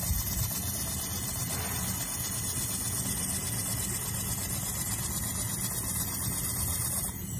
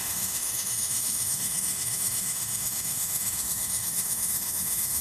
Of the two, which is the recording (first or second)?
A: first